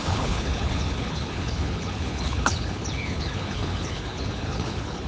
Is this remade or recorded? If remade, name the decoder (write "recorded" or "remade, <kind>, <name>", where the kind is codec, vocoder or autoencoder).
remade, codec, HILCodec